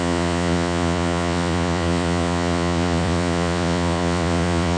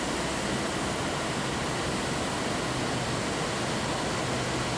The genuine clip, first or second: second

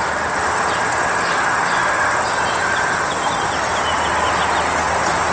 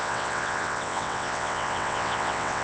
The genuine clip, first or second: first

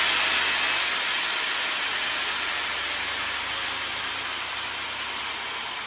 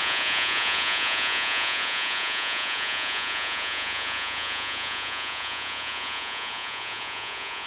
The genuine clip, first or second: first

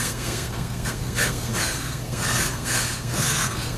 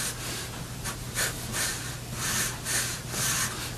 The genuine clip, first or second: second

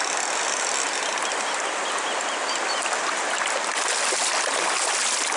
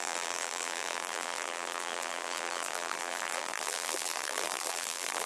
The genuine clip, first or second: first